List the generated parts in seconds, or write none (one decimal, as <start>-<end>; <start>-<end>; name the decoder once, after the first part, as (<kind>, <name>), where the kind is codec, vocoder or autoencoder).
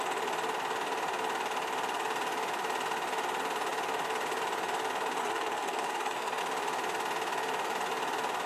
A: 5.2-6.4 (codec, SNAC)